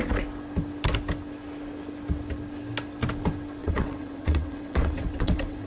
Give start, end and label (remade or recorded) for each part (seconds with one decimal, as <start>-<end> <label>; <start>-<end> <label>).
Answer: 0.0-3.6 recorded; 3.6-5.7 remade